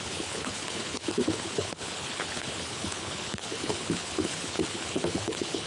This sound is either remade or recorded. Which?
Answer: remade